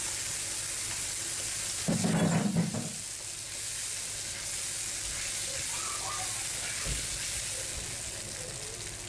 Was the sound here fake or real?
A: real